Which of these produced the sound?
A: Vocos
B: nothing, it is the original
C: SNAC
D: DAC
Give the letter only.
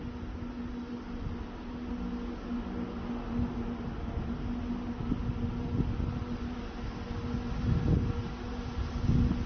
B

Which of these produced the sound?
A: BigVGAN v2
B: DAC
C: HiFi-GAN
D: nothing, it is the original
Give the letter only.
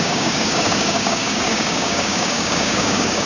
B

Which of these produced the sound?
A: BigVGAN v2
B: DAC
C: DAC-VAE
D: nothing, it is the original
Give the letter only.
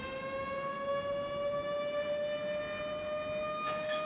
D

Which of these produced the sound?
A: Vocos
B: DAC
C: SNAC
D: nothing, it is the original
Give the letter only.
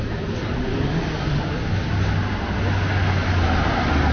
D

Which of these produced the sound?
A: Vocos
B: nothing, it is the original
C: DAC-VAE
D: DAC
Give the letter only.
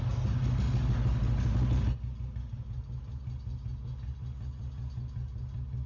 B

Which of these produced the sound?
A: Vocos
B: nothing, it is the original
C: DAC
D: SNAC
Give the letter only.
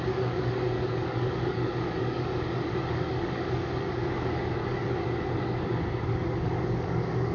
C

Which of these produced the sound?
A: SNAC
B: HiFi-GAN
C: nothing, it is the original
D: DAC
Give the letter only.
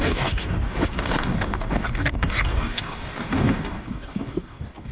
D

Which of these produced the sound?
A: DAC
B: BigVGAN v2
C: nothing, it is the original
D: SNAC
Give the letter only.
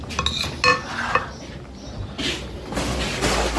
C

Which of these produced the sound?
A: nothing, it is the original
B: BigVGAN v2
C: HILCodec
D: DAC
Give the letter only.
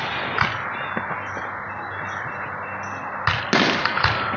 A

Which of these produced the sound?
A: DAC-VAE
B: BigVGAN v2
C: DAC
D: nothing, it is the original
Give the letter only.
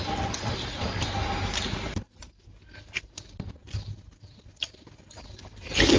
D